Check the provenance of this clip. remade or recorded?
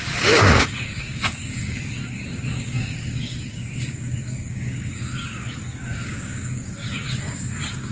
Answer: remade